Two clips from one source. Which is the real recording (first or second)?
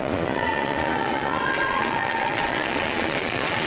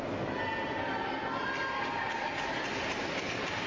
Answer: second